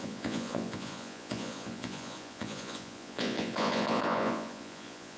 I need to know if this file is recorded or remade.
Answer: remade